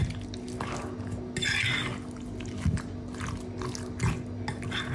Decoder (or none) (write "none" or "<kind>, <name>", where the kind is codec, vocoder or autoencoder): none